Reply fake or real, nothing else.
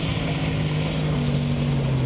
real